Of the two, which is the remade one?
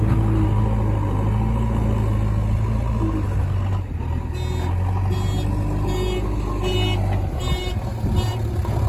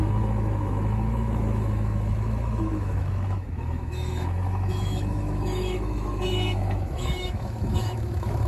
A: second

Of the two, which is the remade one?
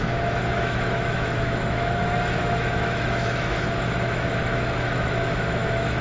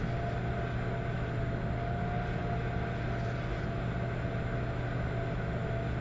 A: first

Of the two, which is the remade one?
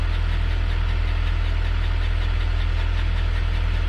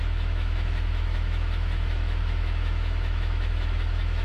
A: second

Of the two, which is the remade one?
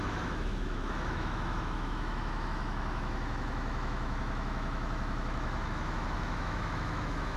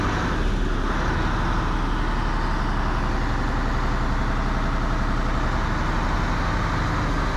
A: first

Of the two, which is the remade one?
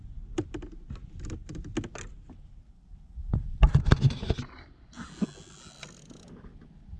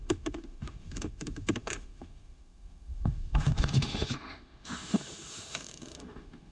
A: second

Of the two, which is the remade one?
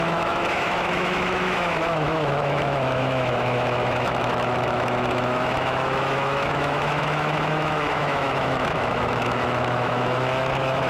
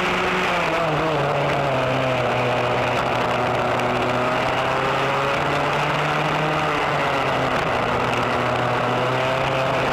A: first